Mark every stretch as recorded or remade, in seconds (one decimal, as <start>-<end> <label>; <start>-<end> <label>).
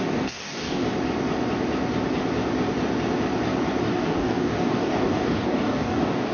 0.0-0.8 remade; 0.8-3.8 recorded; 3.8-6.3 remade